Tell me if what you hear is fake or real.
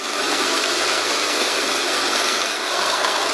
fake